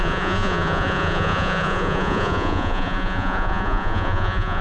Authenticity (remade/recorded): remade